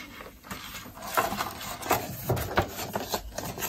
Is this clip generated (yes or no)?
no